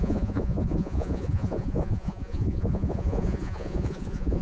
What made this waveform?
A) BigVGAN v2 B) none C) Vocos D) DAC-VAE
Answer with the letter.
C